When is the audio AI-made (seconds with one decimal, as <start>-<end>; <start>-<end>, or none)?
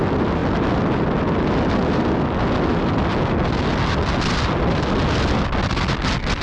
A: none